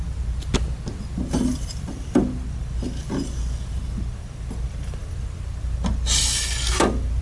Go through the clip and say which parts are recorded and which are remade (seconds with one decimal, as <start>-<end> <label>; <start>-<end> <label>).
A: 0.0-7.2 recorded